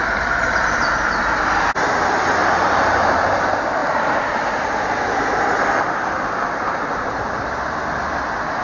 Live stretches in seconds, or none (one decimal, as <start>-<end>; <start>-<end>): 0.0-2.4; 3.1-3.8; 4.4-8.6